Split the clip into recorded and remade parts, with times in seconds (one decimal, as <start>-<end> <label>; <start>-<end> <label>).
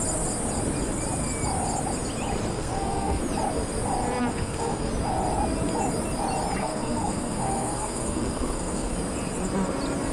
0.0-2.5 recorded; 2.5-3.2 remade; 3.2-4.3 recorded; 4.3-4.9 remade; 4.9-6.6 recorded; 6.6-8.9 remade; 8.9-10.1 recorded